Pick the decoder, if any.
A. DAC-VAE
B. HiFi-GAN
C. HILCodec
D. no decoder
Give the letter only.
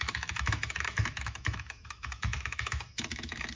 A